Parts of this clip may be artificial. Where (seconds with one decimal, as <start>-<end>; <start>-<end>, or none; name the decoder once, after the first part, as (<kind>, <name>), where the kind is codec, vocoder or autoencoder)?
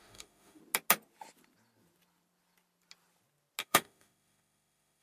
0.0-0.6 (autoencoder, DAC-VAE); 3.6-5.0